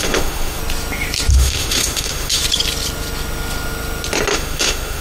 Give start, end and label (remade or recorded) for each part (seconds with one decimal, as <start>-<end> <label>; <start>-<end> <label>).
0.0-0.6 remade; 0.6-1.3 recorded; 1.3-2.4 remade; 2.4-4.3 recorded; 4.3-5.0 remade